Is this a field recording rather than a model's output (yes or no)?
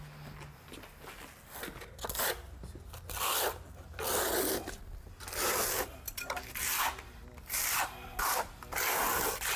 yes